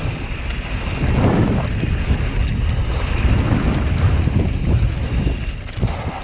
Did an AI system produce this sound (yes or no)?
no